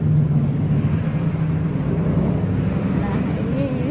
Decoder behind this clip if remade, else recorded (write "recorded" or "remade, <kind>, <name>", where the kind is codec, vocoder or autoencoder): recorded